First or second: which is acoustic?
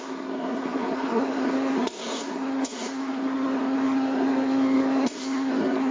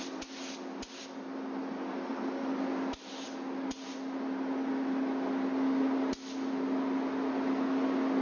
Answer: second